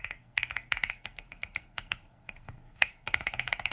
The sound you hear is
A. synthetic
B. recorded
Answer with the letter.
A